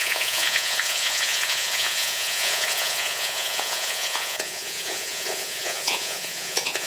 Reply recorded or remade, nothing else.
remade